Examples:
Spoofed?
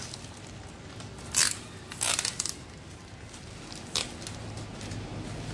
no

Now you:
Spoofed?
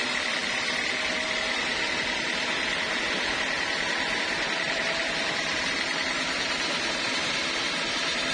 no